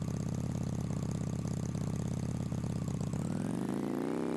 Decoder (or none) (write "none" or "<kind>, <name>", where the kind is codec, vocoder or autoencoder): none